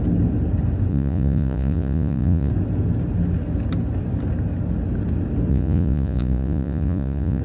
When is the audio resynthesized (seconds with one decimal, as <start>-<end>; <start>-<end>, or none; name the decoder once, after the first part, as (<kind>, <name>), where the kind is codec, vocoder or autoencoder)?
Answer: 0.9-2.5 (vocoder, Vocos); 5.5-7.4